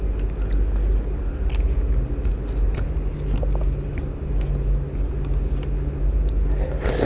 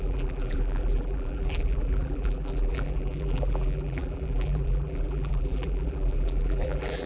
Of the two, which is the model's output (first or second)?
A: second